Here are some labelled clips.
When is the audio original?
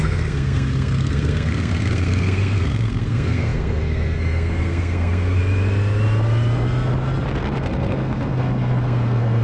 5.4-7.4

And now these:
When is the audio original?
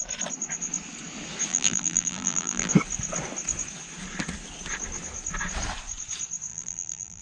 0.0-1.5; 2.7-6.5